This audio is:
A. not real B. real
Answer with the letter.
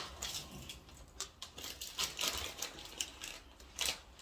B